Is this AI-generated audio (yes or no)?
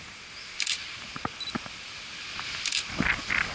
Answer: no